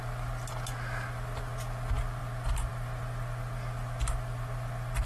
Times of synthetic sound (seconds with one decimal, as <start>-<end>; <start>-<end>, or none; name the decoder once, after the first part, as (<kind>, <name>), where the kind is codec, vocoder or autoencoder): none